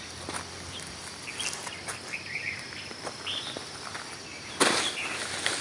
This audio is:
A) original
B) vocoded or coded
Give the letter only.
A